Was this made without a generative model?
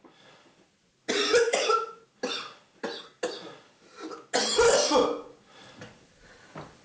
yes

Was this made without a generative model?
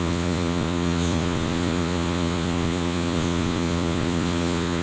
no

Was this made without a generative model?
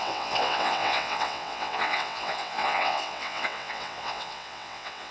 no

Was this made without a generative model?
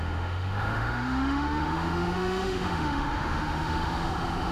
no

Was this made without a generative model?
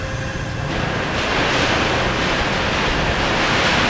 yes